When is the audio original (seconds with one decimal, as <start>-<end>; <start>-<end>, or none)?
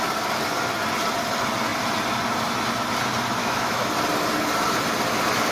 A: 0.0-3.4; 3.9-5.5